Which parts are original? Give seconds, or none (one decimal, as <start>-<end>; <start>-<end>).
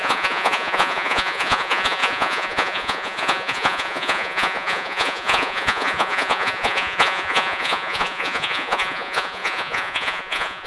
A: none